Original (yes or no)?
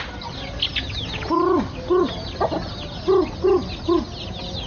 yes